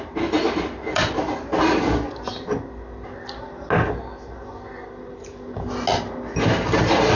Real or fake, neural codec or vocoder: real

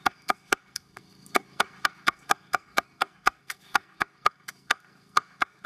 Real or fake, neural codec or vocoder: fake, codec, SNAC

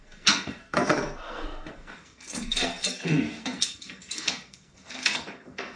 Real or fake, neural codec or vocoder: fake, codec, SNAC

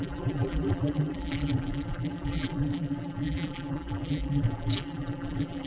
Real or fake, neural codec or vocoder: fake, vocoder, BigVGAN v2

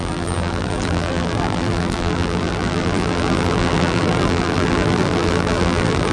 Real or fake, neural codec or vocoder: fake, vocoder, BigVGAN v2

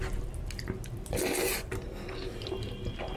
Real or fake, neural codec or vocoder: real